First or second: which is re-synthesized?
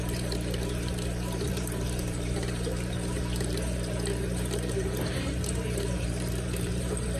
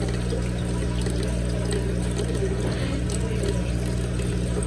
first